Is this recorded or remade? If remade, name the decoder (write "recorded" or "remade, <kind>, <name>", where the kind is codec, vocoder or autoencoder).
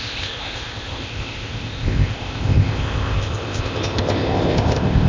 remade, codec, ZipCodec